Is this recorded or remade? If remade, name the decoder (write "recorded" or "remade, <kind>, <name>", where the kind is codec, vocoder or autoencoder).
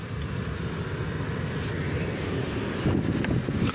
recorded